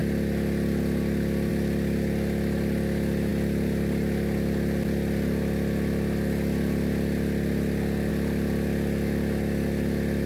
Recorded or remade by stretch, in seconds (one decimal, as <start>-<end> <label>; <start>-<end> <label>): 0.0-10.3 recorded